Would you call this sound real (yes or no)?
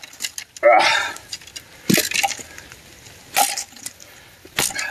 yes